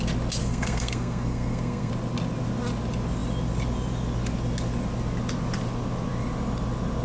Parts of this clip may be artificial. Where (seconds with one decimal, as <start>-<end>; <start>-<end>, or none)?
0.4-1.9